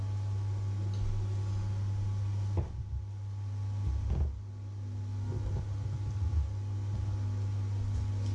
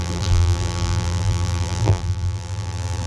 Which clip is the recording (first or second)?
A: first